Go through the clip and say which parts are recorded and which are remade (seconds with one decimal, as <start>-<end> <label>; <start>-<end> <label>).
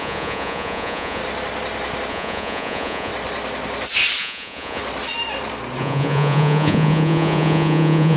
0.0-1.2 remade; 1.2-2.1 recorded; 2.1-3.1 remade; 3.1-4.2 recorded; 4.2-4.8 remade; 4.8-5.8 recorded; 5.8-8.2 remade